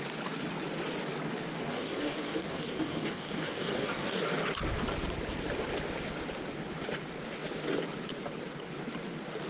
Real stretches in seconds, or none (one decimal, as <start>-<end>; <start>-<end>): 0.0-1.7; 4.2-9.5